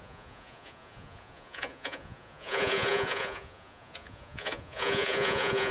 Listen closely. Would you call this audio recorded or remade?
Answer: remade